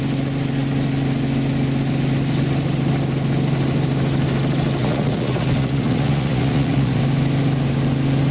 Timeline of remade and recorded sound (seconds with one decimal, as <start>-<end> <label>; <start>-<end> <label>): 0.0-4.8 recorded; 4.8-7.0 remade; 7.0-8.3 recorded